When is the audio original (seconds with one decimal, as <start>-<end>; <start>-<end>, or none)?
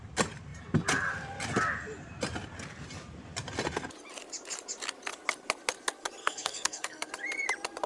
0.0-6.2; 7.1-7.9